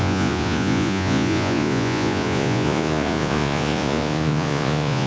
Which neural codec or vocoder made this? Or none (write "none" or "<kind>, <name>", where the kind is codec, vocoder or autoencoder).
vocoder, Vocos